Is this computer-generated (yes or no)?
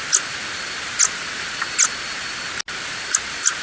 no